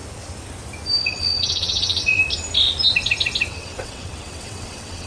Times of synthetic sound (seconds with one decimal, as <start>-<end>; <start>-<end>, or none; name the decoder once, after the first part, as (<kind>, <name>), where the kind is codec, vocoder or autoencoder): 1.0-2.2 (vocoder, WaveNeXt); 3.5-5.1